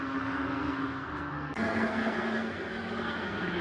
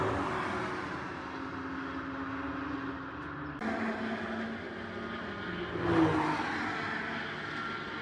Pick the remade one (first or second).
first